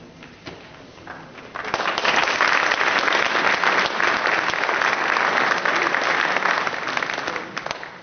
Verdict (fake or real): real